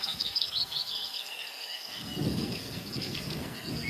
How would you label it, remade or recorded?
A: remade